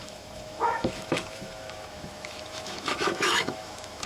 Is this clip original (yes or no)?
no